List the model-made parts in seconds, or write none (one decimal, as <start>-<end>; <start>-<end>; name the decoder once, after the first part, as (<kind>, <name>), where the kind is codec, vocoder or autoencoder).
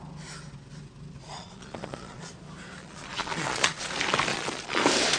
1.3-2.3 (vocoder, Vocos); 2.8-3.9; 4.3-4.8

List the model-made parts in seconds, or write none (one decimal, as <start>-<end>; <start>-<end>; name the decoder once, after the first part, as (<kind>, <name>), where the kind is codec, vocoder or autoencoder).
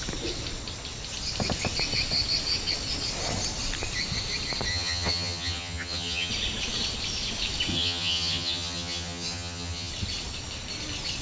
4.7-6.3 (vocoder, HiFi-GAN); 7.7-9.9